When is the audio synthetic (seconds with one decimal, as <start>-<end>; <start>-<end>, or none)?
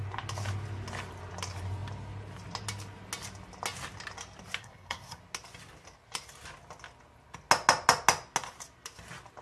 4.6-5.2